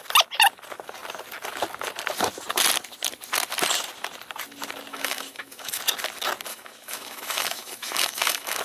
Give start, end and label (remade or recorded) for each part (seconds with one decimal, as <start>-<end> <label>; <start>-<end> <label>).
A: 0.0-4.9 recorded; 4.9-5.8 remade; 5.8-6.5 recorded; 6.5-8.6 remade